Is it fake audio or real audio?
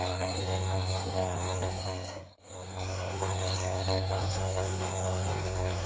fake